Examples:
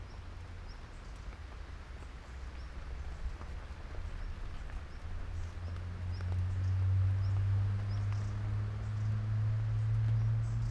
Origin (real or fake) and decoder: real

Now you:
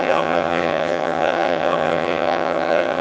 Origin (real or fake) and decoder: fake, vocoder, HiFi-GAN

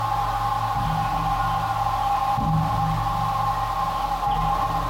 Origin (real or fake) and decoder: real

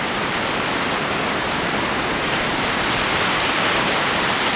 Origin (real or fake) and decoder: real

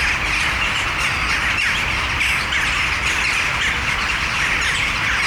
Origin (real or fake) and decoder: real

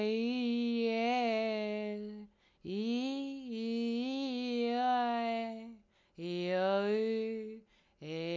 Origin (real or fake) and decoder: real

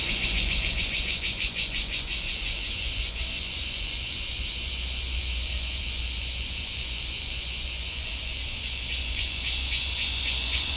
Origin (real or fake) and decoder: fake, vocoder, Vocos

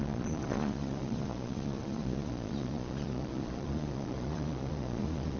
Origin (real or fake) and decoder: fake, vocoder, Vocos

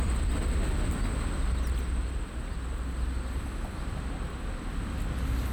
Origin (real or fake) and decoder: real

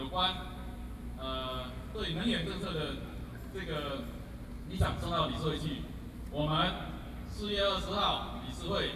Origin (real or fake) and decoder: real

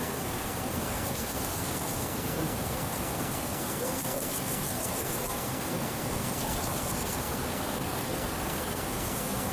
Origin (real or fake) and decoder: fake, codec, SNAC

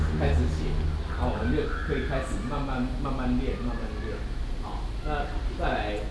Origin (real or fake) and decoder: real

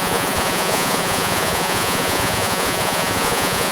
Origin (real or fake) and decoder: fake, vocoder, Vocos